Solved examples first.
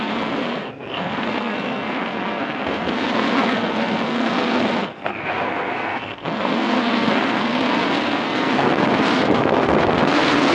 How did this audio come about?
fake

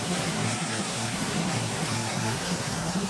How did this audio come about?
fake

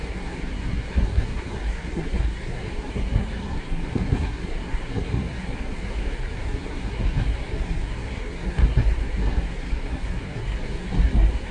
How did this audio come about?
fake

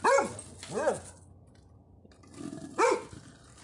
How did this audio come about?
real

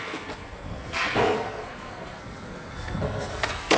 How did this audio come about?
fake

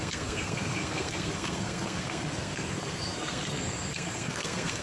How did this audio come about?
fake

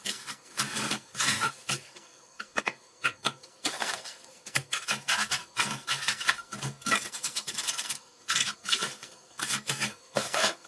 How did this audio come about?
fake